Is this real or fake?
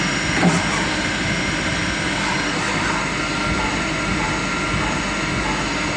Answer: real